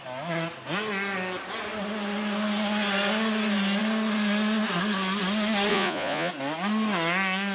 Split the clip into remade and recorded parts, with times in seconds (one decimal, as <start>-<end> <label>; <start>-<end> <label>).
0.0-5.7 recorded; 5.7-6.3 remade; 6.3-7.5 recorded

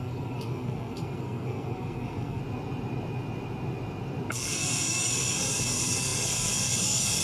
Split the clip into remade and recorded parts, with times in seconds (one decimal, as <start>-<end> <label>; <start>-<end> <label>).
0.0-2.4 remade; 2.4-4.3 recorded; 4.3-7.2 remade

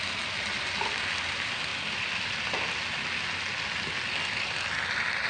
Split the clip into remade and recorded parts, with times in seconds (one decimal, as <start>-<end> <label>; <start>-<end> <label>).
0.0-5.3 recorded

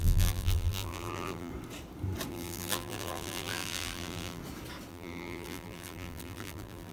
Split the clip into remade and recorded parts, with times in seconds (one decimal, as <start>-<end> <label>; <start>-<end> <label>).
0.0-1.5 remade; 1.5-2.3 recorded; 2.3-4.4 remade; 4.4-4.9 recorded; 4.9-6.9 remade

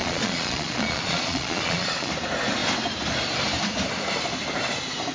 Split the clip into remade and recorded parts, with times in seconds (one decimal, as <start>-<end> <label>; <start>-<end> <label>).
0.0-2.1 remade; 2.1-5.1 recorded

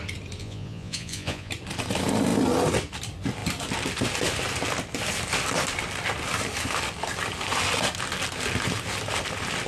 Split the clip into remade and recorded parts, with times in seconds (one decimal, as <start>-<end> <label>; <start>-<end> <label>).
0.0-0.4 recorded; 0.4-1.5 remade; 1.5-9.7 recorded

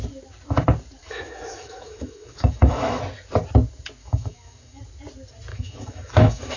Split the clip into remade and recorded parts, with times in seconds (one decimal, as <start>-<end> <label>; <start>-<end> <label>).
0.0-1.0 recorded; 1.0-3.0 remade; 3.0-4.0 recorded; 4.0-4.8 remade; 4.8-5.5 recorded; 5.5-6.6 remade